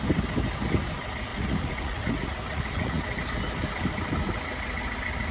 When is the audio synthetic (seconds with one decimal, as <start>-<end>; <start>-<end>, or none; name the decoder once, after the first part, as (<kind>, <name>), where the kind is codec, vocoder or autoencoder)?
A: 1.3-3.0 (vocoder, Vocos)